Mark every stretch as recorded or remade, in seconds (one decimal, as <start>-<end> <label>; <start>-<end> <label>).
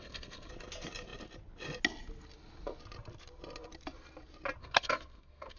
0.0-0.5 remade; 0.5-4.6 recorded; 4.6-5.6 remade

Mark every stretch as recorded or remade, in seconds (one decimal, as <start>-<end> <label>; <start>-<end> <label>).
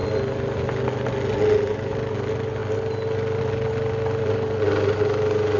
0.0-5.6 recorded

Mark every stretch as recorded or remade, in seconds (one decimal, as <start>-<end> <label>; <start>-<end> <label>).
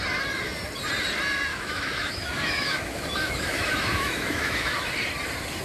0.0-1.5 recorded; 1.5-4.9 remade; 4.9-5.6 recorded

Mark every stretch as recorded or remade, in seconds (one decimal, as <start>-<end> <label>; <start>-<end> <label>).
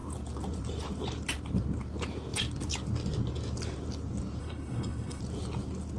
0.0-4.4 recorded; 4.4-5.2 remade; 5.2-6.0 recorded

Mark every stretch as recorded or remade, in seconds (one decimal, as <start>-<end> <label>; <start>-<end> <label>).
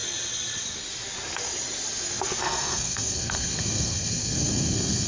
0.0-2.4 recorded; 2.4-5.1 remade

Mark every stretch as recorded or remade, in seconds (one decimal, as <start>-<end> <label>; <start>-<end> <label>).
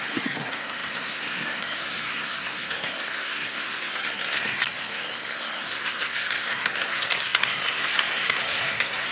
0.0-9.1 remade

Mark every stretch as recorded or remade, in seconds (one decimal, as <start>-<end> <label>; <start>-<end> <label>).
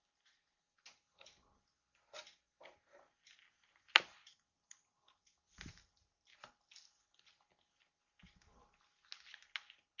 0.0-10.0 recorded